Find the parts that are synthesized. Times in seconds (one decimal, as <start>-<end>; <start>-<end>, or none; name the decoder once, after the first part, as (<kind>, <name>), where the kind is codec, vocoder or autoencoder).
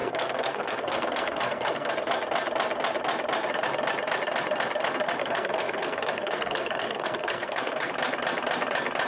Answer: 0.0-1.9 (codec, SNAC); 5.2-7.9